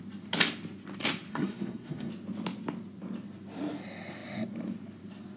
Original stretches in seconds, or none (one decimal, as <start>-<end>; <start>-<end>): 0.0-1.3; 2.1-5.4